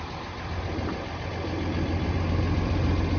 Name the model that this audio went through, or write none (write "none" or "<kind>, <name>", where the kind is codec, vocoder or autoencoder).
none